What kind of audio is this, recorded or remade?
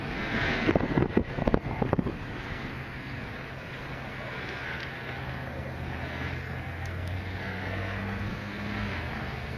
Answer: remade